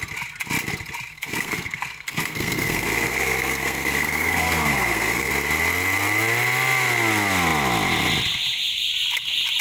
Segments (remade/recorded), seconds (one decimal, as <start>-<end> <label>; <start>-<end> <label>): 0.0-1.1 recorded; 1.1-5.3 remade; 5.3-9.6 recorded